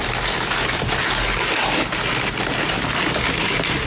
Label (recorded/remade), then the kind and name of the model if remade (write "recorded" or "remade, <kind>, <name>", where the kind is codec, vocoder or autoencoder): recorded